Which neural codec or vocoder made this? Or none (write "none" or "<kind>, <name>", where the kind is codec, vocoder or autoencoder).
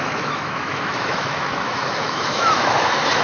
autoencoder, DAC-VAE